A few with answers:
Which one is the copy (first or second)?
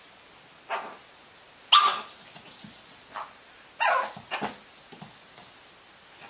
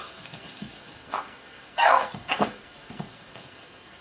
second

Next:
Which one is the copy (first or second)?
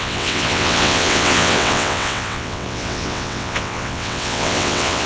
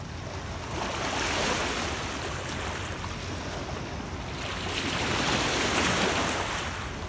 first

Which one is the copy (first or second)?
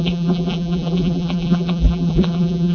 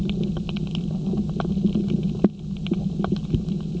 first